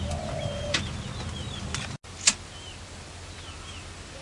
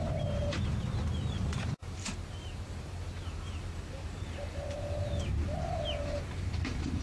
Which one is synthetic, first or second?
second